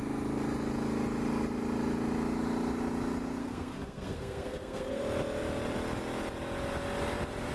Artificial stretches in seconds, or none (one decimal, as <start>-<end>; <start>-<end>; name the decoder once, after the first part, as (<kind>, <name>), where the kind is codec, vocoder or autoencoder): 3.4-5.0 (codec, SNAC)